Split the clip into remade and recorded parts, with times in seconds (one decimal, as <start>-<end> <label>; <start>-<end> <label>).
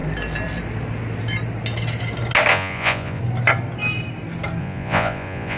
0.0-2.5 recorded; 2.5-3.2 remade; 3.2-4.6 recorded; 4.6-5.6 remade